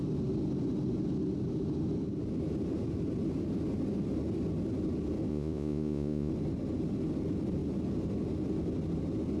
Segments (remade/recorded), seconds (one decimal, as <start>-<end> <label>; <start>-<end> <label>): 0.0-5.3 recorded; 5.3-6.3 remade; 6.3-9.4 recorded